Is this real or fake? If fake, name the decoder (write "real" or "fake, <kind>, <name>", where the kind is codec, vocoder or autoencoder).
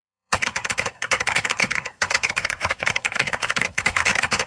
fake, codec, SNAC